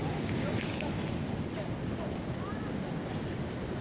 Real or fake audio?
fake